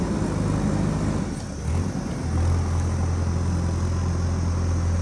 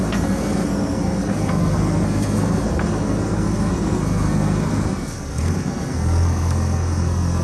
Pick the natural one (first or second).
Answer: first